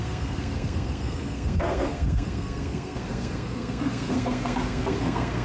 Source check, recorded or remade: remade